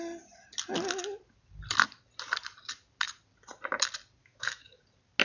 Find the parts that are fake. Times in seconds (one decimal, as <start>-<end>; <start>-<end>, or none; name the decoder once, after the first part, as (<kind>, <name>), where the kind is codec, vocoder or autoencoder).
4.2-4.8 (autoencoder, DAC-VAE)

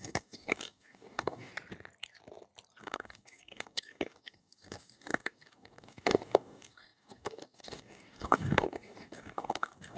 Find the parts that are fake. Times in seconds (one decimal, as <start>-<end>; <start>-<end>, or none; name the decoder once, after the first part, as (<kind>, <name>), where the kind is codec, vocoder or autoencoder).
0.0-1.5 (codec, DAC); 2.8-10.0

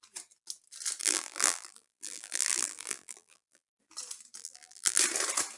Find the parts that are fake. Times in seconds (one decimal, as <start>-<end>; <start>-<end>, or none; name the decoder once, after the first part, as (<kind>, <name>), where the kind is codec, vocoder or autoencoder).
1.0-3.8 (vocoder, BigVGAN v2); 4.4-5.0